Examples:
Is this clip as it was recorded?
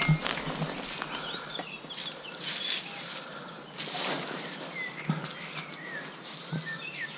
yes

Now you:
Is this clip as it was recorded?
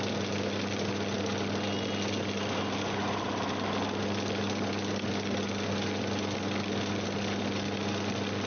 yes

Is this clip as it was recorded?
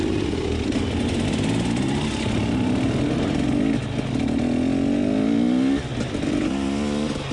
yes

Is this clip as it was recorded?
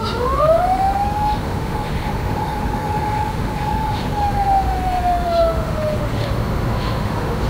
no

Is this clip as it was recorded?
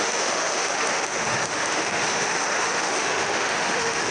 no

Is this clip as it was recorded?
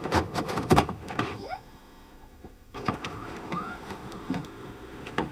no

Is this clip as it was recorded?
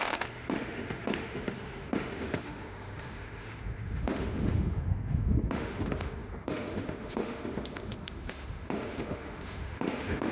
no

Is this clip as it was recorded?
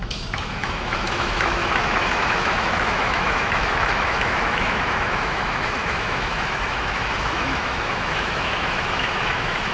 no